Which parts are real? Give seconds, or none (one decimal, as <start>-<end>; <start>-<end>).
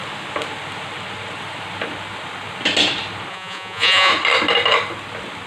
0.0-3.3; 4.1-5.5